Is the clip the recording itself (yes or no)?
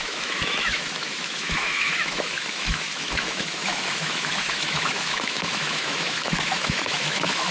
no